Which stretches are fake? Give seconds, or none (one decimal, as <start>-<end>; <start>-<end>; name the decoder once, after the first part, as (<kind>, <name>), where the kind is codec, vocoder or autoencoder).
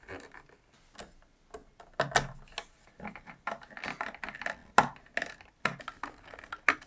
none